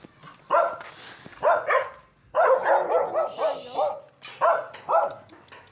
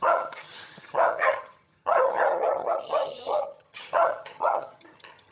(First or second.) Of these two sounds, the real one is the first